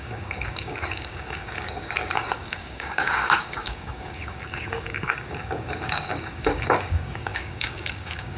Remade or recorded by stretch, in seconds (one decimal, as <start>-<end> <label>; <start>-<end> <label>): 0.0-8.4 remade